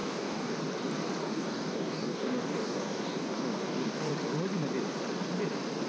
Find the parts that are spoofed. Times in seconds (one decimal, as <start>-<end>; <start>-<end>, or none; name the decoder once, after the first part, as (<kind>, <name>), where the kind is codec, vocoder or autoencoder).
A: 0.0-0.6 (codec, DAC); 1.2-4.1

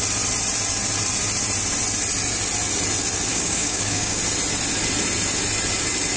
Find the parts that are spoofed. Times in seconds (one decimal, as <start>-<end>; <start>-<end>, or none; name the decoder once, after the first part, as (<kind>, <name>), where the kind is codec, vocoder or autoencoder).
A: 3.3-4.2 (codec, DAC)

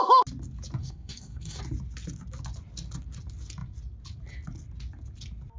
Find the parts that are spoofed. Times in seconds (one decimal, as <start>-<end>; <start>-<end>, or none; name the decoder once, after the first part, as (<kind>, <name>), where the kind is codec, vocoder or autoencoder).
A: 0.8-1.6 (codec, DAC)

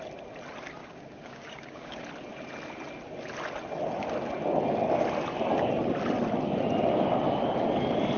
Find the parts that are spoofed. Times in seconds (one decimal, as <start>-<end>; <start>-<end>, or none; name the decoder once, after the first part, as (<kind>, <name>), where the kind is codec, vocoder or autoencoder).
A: 0.8-2.0 (codec, DAC)